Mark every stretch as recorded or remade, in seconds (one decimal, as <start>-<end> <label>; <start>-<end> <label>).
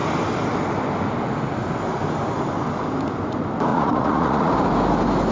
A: 0.0-3.7 recorded; 3.7-4.5 remade; 4.5-5.3 recorded